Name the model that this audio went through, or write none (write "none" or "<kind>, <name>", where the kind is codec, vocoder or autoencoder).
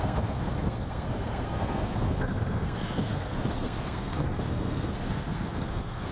codec, SNAC